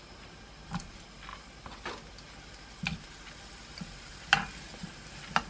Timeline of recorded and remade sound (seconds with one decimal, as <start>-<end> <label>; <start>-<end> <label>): 0.0-5.5 recorded